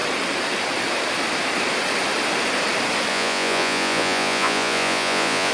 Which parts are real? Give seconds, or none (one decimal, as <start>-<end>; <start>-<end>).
0.0-3.1

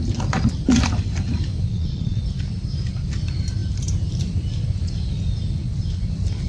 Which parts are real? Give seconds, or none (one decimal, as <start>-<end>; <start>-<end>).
0.0-1.7; 2.2-6.5

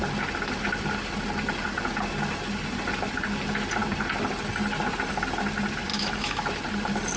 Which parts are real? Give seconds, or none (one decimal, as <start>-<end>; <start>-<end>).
0.0-5.9; 6.6-7.2

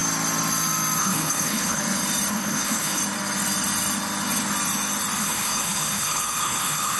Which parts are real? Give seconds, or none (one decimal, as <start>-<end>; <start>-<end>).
0.0-1.0; 1.8-2.3; 3.0-5.2

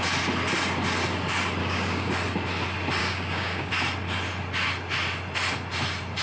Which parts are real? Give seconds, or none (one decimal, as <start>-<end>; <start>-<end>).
0.0-1.6; 2.1-3.0; 3.7-6.2